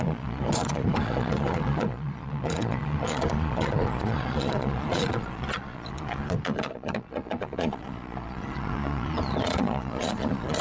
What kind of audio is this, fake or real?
fake